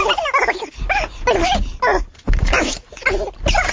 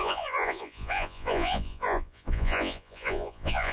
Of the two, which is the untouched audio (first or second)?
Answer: first